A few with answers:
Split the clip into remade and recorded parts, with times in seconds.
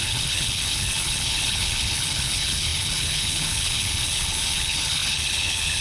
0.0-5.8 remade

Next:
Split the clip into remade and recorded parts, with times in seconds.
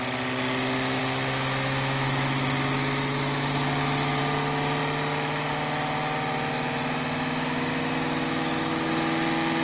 0.0-1.0 recorded; 1.0-4.2 remade; 4.2-7.7 recorded; 7.7-8.9 remade; 8.9-9.6 recorded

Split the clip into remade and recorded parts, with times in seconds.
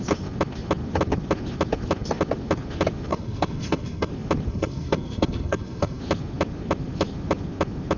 0.0-3.1 recorded; 3.1-4.1 remade; 4.1-4.5 recorded; 4.5-6.0 remade; 6.0-8.0 recorded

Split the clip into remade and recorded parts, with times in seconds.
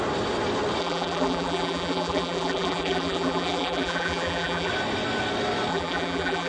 0.0-0.8 recorded; 0.8-4.7 remade; 4.7-5.7 recorded; 5.7-6.5 remade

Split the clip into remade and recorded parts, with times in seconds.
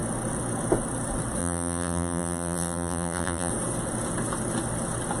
0.0-1.4 recorded; 1.4-3.5 remade; 3.5-5.2 recorded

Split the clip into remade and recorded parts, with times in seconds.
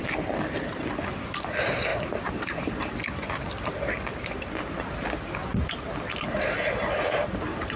0.0-1.9 recorded; 1.9-2.8 remade; 2.8-7.8 recorded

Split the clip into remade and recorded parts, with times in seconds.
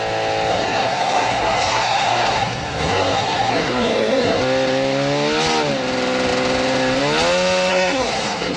0.0-0.5 recorded; 0.5-4.4 remade; 4.4-7.7 recorded; 7.7-8.6 remade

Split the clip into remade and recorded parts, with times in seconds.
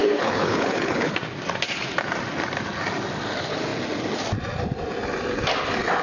0.0-1.1 remade; 1.1-6.0 recorded